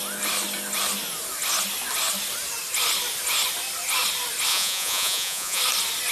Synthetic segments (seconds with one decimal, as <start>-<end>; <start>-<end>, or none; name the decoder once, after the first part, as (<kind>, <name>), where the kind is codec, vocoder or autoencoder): 4.5-5.6 (vocoder, Vocos)